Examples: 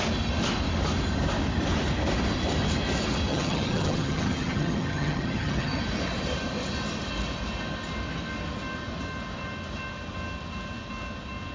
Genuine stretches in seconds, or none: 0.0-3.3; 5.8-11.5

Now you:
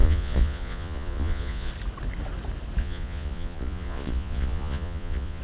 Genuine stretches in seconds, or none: 1.7-2.8